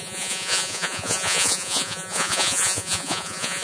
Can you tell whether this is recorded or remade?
remade